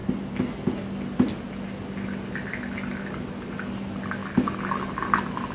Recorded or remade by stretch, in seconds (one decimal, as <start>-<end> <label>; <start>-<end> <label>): 0.0-5.5 recorded